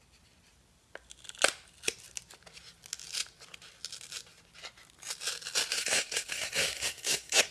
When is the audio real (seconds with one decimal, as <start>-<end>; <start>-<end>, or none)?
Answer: 0.0-5.7